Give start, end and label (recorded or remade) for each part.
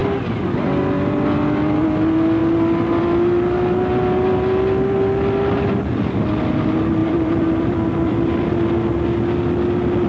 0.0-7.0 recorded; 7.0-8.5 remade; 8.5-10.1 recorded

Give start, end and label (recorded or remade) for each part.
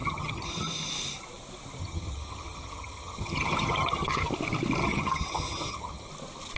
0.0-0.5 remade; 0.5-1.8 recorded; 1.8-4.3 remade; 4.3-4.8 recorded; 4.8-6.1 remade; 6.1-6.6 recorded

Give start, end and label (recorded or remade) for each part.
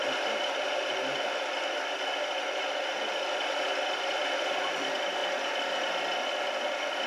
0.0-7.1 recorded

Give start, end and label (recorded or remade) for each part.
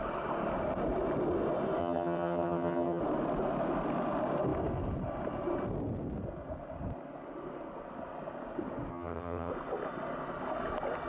0.0-1.8 recorded; 1.8-3.0 remade; 3.0-8.9 recorded; 8.9-9.5 remade; 9.5-11.1 recorded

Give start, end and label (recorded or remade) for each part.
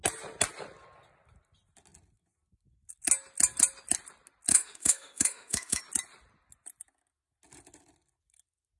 0.0-4.5 recorded; 4.5-5.8 remade; 5.8-8.8 recorded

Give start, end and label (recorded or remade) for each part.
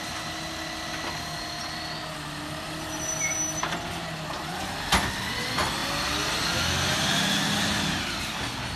0.0-8.8 recorded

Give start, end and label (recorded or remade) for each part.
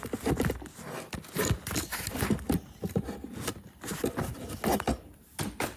0.0-5.8 recorded